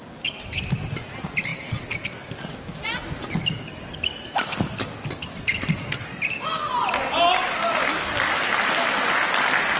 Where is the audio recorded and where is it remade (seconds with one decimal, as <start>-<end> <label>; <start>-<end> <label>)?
0.0-9.8 recorded